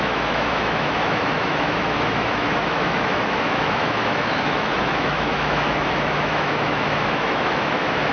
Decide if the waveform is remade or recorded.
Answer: remade